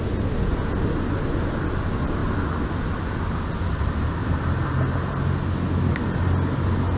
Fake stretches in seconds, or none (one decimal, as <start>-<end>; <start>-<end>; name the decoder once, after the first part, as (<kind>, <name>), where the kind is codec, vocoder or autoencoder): none